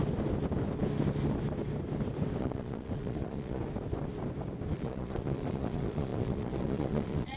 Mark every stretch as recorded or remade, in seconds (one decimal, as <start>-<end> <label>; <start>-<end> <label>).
0.0-2.4 recorded; 2.4-3.6 remade; 3.6-4.7 recorded; 4.7-7.4 remade